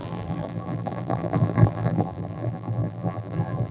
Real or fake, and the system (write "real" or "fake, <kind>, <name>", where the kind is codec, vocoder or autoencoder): fake, vocoder, BigVGAN v2